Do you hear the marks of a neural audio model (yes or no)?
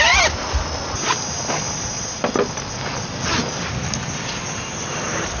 no